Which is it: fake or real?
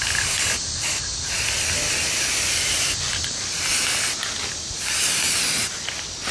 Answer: real